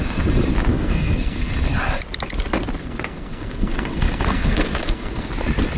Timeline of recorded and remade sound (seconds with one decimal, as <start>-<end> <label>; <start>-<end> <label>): 0.0-0.7 recorded; 0.7-1.5 remade; 1.5-2.8 recorded; 2.8-5.3 remade; 5.3-5.8 recorded